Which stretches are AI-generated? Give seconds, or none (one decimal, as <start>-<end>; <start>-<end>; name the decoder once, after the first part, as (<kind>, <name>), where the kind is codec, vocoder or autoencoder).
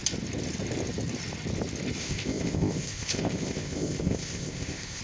2.0-5.0 (codec, ZipCodec)